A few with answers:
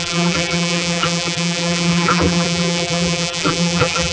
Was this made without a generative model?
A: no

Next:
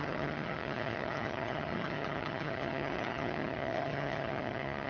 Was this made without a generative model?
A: no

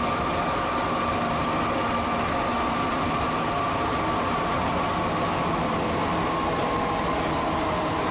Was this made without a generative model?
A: yes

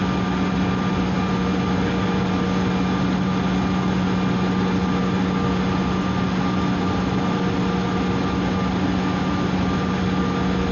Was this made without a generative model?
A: yes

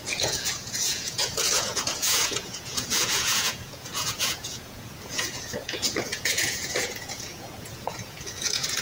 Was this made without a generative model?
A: no